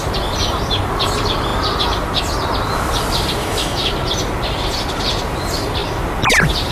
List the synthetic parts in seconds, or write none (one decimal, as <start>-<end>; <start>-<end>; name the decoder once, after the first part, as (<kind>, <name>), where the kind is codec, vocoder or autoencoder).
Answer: 3.4-3.9 (autoencoder, DAC-VAE)